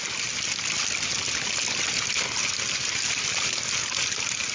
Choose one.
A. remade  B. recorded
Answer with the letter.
B